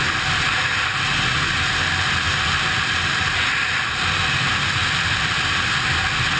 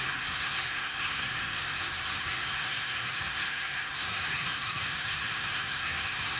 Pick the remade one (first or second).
second